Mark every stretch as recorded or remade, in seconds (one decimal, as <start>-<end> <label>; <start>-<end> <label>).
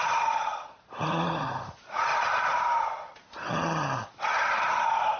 0.0-2.1 remade; 2.1-5.2 recorded